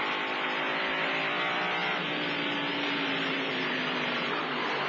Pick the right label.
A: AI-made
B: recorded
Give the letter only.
B